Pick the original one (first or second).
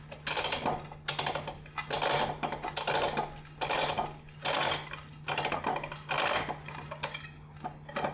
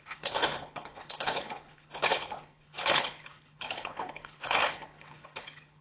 first